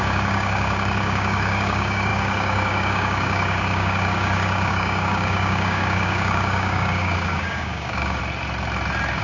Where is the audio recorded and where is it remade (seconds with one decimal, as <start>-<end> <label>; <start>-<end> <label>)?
0.0-8.2 remade; 8.2-9.2 recorded